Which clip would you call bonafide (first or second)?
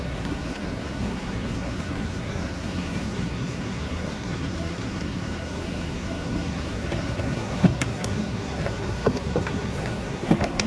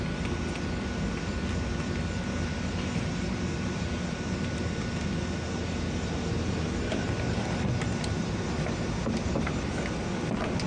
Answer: second